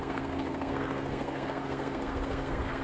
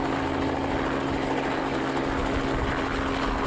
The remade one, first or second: first